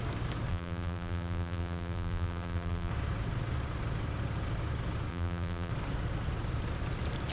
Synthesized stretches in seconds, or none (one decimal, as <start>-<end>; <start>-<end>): 0.5-2.9; 5.1-5.7